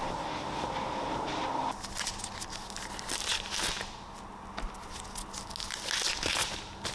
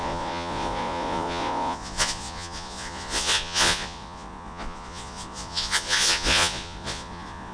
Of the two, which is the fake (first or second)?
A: second